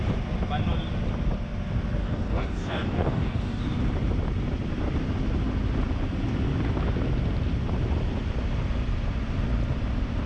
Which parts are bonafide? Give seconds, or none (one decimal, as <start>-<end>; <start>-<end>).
0.0-2.0; 3.6-10.3